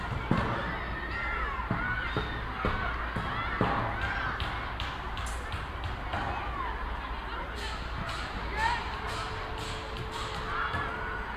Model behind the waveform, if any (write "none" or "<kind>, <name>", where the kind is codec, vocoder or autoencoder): none